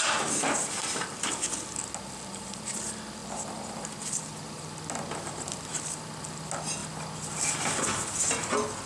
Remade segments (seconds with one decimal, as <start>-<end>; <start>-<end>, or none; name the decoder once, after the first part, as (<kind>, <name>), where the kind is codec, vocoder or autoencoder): none